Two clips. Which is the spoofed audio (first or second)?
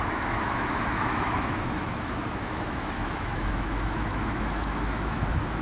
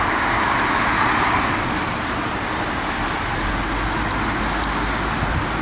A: first